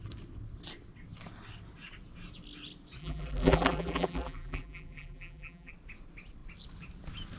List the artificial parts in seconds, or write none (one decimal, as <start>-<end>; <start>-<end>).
3.0-5.7